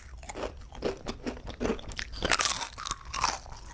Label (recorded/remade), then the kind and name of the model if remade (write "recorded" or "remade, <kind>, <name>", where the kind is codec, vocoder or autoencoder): recorded